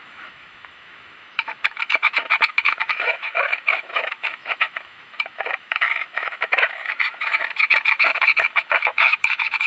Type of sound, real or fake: fake